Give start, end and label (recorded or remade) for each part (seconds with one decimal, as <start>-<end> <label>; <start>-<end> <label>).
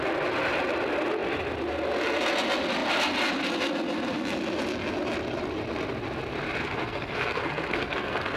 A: 0.0-6.6 recorded; 6.6-8.4 remade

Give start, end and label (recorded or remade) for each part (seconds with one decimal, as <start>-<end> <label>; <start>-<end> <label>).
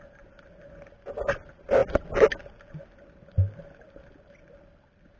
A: 0.0-5.2 recorded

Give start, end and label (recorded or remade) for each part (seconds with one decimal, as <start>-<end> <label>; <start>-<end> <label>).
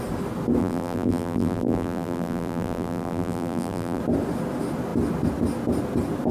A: 0.0-0.6 recorded; 0.6-4.0 remade; 4.0-6.3 recorded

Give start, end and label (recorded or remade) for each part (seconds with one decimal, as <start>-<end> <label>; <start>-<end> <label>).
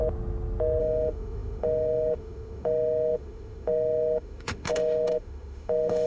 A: 0.0-0.8 recorded; 0.8-6.1 remade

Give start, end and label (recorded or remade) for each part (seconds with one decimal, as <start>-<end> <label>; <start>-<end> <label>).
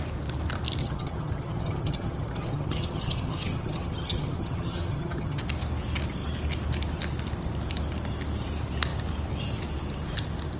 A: 0.0-0.8 recorded; 0.8-5.4 remade; 5.4-10.6 recorded